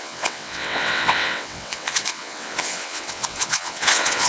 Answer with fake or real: fake